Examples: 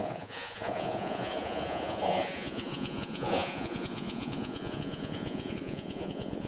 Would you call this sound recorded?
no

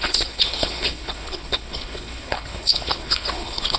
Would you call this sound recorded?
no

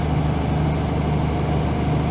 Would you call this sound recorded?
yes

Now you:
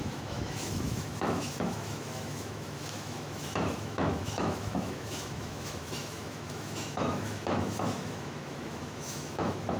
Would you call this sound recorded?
no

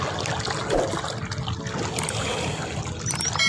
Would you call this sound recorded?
yes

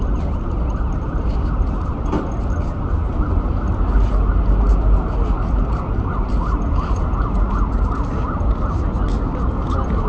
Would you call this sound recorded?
yes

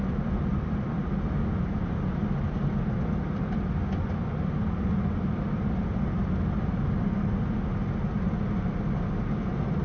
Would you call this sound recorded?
yes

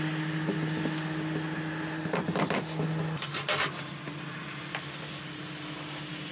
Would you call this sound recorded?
yes